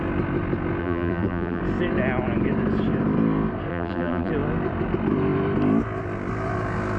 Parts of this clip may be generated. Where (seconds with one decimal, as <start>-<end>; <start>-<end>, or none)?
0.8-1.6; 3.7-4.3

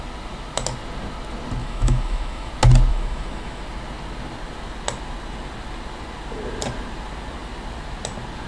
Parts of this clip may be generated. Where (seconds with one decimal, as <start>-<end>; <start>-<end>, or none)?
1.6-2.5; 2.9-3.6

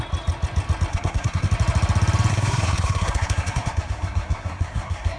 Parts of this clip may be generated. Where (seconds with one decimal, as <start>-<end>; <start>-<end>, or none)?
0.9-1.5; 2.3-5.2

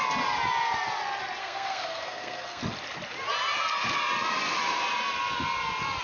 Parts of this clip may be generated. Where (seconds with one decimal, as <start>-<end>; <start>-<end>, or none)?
1.4-2.6

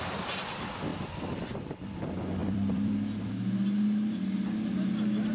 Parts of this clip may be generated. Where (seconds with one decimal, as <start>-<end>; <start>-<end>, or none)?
0.9-1.5; 2.4-3.4